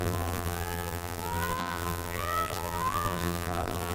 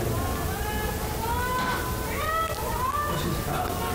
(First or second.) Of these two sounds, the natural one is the second